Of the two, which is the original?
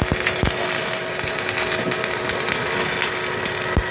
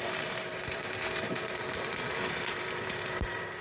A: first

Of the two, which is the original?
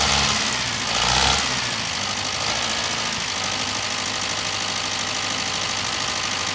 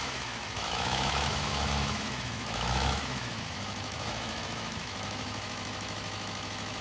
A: first